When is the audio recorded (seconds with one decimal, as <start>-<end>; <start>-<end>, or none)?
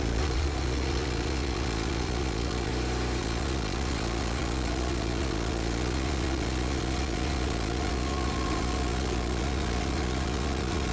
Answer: 2.7-3.2